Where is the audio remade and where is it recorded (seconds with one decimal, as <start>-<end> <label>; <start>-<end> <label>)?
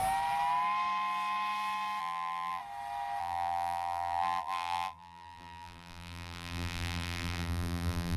0.0-2.0 recorded; 2.0-2.6 remade; 2.6-3.2 recorded; 3.2-8.2 remade